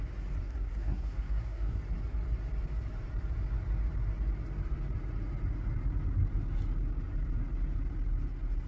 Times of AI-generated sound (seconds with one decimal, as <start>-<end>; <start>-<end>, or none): 0.4-1.8